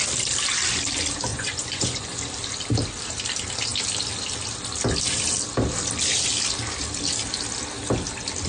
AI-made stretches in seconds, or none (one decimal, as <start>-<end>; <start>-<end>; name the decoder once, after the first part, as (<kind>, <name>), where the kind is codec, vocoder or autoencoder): 1.3-2.2 (vocoder, Vocos)